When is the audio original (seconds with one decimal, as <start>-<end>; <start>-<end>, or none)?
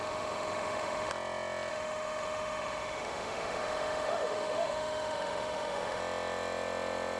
1.1-1.7; 6.0-7.2